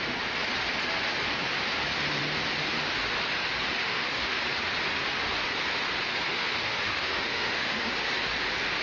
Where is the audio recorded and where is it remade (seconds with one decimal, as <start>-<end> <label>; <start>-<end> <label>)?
0.0-3.8 recorded; 3.8-4.4 remade; 4.4-6.3 recorded; 6.3-7.9 remade; 7.9-8.8 recorded